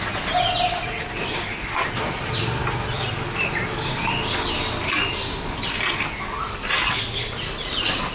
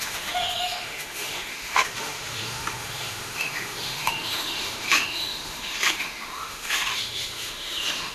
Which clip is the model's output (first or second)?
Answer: second